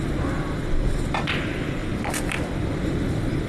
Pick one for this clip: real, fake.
fake